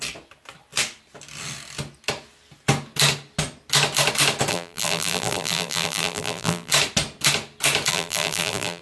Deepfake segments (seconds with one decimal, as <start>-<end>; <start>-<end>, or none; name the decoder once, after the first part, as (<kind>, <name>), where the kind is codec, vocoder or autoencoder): 4.5-6.7 (vocoder, BigVGAN v2); 7.9-8.8